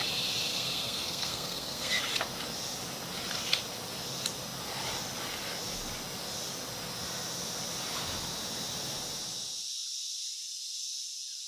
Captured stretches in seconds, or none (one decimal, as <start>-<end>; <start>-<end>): 0.0-0.5; 2.0-11.5